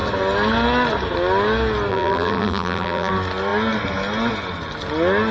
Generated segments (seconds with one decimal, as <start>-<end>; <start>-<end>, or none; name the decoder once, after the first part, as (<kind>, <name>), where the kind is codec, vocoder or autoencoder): 1.9-3.1 (vocoder, BigVGAN v2)

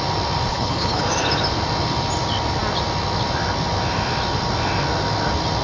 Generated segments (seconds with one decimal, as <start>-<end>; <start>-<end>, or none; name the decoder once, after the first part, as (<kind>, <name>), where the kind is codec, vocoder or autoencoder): 0.5-1.0 (codec, HILCodec)

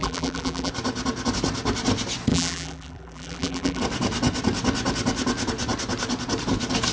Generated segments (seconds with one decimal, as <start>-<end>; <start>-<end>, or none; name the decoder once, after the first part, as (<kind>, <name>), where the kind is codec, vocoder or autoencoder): 0.0-0.7 (vocoder, BigVGAN v2); 2.3-3.8

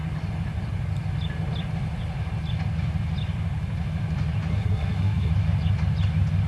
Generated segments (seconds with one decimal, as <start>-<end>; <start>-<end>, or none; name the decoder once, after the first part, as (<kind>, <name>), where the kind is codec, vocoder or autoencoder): 4.5-5.3 (codec, SNAC)

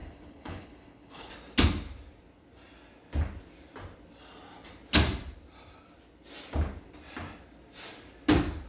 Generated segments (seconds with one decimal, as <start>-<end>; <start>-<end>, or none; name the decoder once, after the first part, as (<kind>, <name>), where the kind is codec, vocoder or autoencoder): 0.0-1.3 (codec, HILCodec)

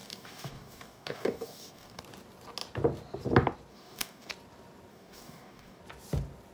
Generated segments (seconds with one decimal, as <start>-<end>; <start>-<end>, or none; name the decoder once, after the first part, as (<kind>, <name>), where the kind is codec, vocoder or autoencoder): 0.0-2.0 (codec, DAC); 3.7-4.3; 4.9-5.8

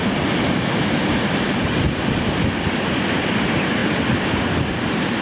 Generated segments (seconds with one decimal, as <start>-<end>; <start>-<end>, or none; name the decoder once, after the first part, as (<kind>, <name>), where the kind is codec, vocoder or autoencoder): none